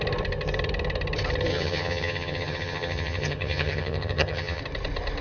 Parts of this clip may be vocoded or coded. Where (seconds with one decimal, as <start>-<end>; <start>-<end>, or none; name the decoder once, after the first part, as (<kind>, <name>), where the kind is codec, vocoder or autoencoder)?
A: 1.5-4.6 (vocoder, HiFi-GAN)